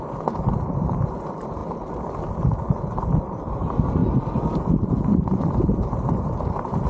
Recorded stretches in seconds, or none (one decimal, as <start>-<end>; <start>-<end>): 1.6-2.1; 4.0-4.5